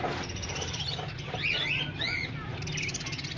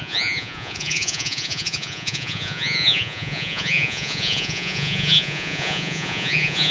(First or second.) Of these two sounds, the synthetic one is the second